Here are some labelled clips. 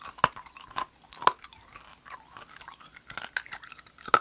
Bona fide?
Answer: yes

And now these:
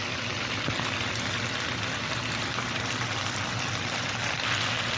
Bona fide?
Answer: yes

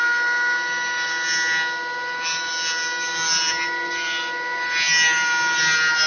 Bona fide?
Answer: yes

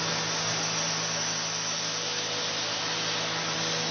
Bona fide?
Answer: yes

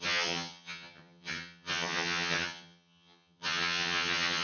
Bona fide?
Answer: no